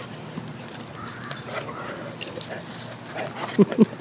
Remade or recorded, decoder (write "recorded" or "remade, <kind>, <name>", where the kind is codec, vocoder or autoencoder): remade, vocoder, BigVGAN v2